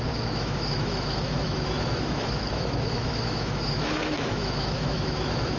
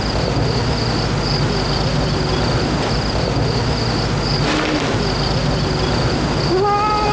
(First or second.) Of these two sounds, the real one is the second